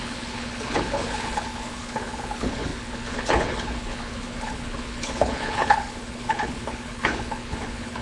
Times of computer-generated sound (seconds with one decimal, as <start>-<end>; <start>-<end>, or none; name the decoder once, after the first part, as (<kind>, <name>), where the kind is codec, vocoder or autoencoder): 0.0-8.0 (codec, HILCodec)